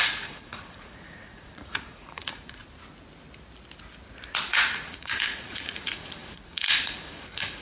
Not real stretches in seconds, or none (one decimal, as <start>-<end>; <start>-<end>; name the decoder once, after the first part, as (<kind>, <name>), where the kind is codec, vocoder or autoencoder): 0.0-2.6 (vocoder, Vocos); 4.5-7.6